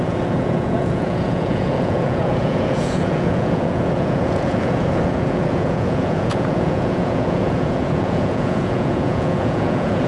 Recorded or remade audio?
remade